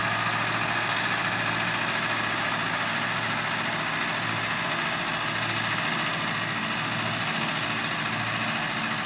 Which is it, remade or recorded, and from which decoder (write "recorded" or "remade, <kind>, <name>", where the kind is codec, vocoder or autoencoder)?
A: recorded